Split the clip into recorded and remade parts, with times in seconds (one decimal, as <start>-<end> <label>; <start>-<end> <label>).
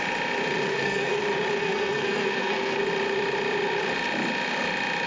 0.0-0.7 recorded; 0.7-1.2 remade; 1.2-1.6 recorded; 1.6-2.8 remade; 2.8-5.1 recorded